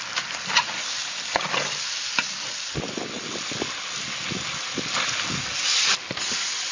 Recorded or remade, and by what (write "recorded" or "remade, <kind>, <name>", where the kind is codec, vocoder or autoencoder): recorded